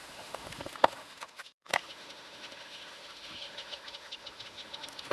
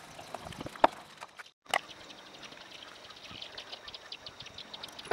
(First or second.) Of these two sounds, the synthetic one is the first